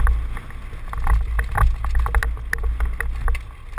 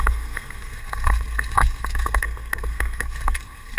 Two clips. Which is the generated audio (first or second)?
second